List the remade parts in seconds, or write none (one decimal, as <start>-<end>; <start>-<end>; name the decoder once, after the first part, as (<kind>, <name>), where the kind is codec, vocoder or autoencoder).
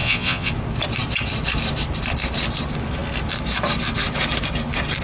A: 0.0-0.5 (vocoder, Vocos)